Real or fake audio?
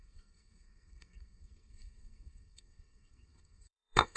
fake